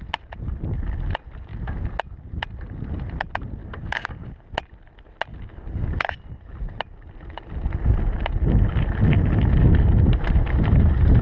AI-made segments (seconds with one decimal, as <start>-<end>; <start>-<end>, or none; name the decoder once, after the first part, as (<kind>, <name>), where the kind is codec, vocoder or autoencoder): 3.6-4.4 (codec, DAC); 5.3-5.9